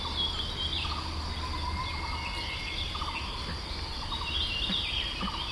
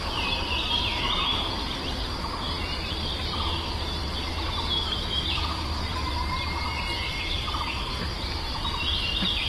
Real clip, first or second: first